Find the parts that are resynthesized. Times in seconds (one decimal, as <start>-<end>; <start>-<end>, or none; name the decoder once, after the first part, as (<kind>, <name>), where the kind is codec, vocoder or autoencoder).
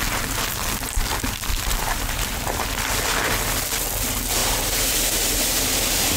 1.5-2.9 (vocoder, BigVGAN v2)